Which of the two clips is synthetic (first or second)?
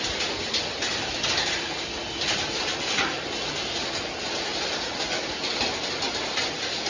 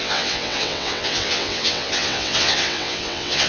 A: second